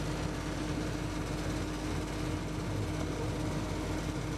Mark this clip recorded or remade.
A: recorded